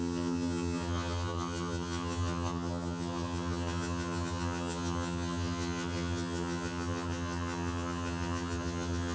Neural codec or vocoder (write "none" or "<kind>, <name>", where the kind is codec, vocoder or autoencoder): vocoder, HiFi-GAN